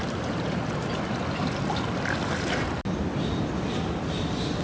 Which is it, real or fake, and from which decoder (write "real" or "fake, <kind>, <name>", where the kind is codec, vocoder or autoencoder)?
real